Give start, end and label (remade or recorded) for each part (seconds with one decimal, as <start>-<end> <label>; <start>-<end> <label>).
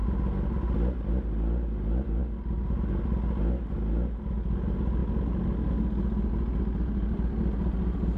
0.0-8.2 recorded